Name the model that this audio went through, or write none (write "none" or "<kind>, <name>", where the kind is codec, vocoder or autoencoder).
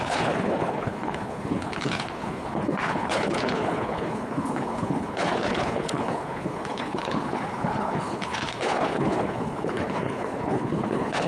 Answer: codec, HILCodec